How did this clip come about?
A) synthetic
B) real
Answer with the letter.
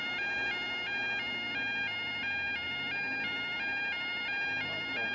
B